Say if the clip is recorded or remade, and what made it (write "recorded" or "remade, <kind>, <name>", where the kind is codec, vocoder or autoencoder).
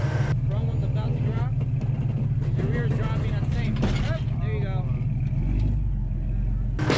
recorded